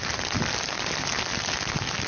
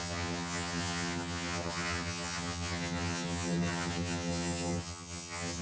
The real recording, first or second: first